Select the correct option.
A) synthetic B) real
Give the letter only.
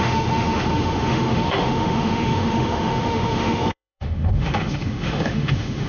A